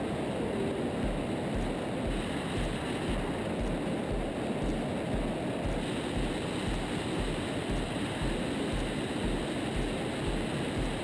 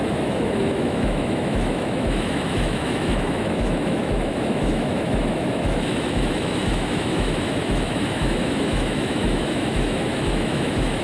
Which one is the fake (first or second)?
second